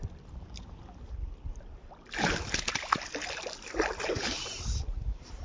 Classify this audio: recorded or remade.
recorded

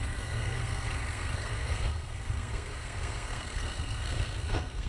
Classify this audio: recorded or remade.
remade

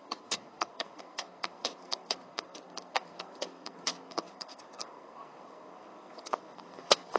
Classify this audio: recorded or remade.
remade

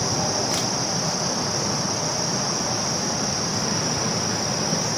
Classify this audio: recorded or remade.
recorded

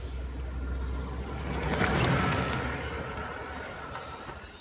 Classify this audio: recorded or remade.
recorded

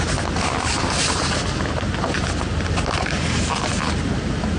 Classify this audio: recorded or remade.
recorded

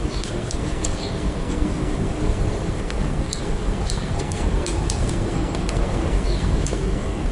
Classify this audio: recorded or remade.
remade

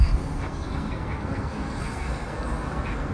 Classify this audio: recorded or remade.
remade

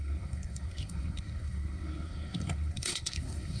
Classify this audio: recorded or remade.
remade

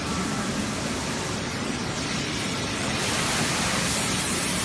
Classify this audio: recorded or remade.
recorded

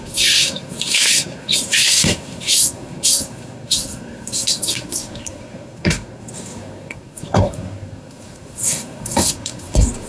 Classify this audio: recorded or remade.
remade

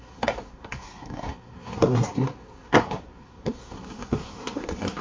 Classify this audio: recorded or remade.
remade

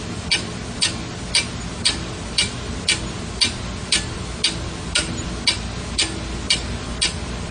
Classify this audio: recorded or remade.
recorded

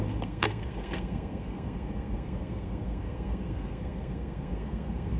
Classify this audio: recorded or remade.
remade